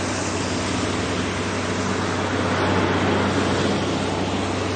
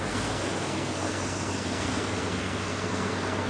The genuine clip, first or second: first